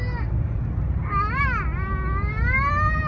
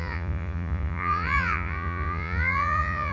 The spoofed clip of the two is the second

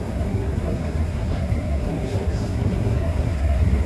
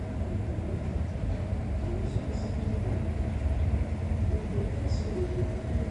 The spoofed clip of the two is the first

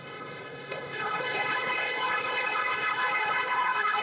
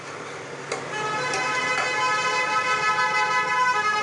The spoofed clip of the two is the first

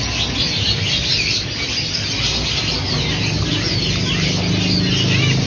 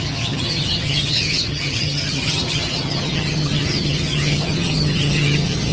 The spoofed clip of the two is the second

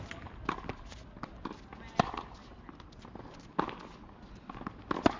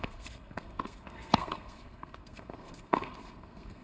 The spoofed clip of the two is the second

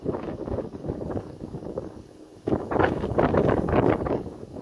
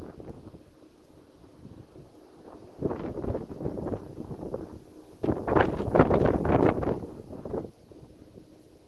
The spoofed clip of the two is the first